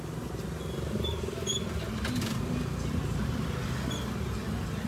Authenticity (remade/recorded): recorded